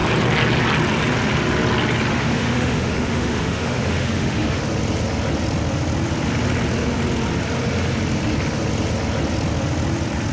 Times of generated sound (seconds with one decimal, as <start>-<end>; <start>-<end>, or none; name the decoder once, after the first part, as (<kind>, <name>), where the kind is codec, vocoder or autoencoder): 2.1-4.6 (autoencoder, DAC-VAE)